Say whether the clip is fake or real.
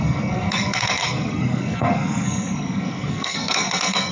fake